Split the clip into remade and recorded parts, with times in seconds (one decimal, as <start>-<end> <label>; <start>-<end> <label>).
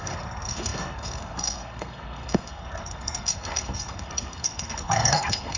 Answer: 0.0-5.6 remade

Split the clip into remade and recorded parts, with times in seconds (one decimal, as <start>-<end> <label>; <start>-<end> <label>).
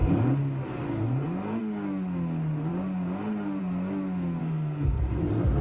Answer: 0.0-4.4 recorded; 4.4-5.0 remade; 5.0-5.6 recorded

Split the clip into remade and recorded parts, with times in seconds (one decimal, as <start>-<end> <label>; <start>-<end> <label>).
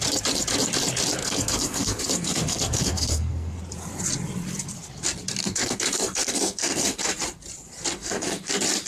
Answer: 0.0-1.2 recorded; 1.2-3.6 remade; 3.6-5.4 recorded; 5.4-7.1 remade; 7.1-7.9 recorded; 7.9-8.5 remade; 8.5-8.9 recorded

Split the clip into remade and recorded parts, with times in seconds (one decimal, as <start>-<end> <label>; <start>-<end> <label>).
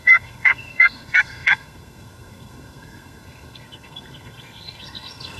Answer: 0.0-5.4 remade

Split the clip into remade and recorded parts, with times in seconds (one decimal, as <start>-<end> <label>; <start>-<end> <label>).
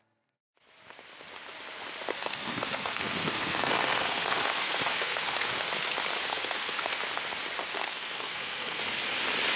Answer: 0.0-2.1 recorded; 2.1-5.7 remade; 5.7-6.3 recorded; 6.3-7.0 remade; 7.0-7.7 recorded; 7.7-8.8 remade; 8.8-9.6 recorded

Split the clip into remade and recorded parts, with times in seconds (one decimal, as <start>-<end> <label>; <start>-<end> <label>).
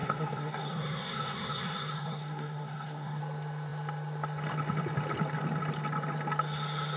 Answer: 0.0-3.2 remade; 3.2-7.0 recorded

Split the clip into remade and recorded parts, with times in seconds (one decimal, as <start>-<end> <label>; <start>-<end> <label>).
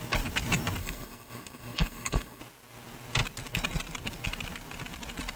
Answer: 0.0-0.8 recorded; 0.8-2.4 remade; 2.4-5.4 recorded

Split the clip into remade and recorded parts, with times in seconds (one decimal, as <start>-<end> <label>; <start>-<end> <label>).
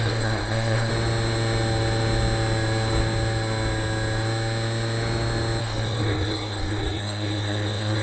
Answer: 0.0-0.9 remade; 0.9-5.6 recorded; 5.6-8.0 remade